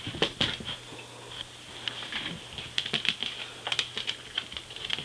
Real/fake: real